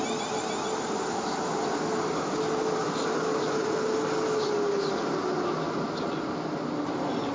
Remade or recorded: recorded